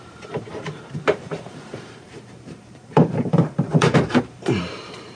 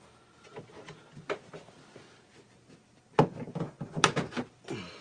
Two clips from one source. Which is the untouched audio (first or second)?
second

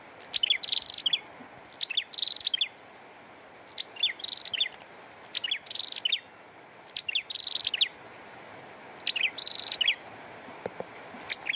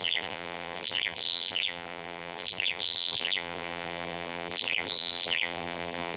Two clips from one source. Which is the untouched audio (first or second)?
first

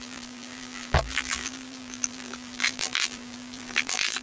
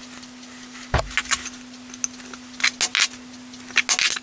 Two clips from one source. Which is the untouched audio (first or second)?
second